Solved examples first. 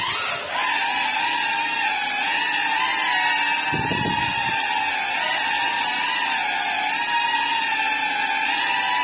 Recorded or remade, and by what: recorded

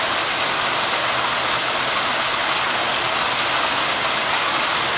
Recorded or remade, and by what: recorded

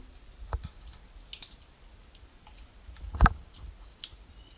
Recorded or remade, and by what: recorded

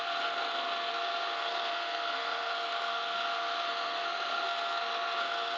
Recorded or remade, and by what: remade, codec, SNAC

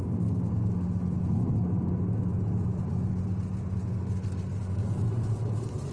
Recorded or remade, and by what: recorded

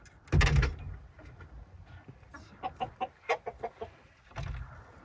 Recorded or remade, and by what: recorded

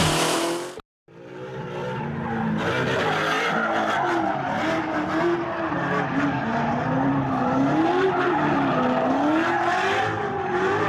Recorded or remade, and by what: recorded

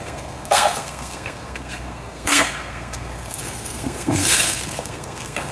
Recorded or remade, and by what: remade, codec, SNAC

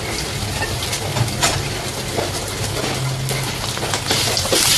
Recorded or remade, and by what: recorded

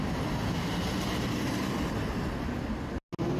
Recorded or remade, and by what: recorded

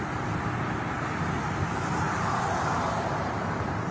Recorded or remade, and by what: recorded